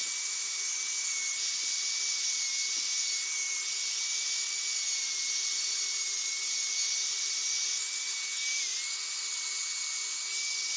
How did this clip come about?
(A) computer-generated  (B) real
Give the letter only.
B